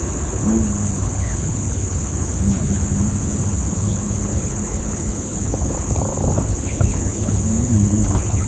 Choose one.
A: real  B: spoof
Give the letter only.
B